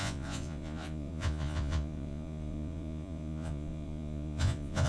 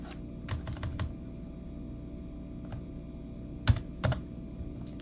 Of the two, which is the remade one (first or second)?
first